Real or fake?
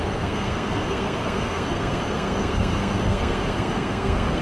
fake